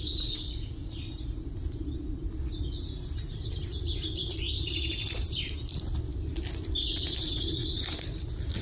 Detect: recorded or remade recorded